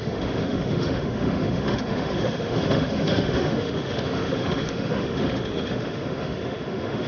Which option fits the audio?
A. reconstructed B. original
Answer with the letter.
A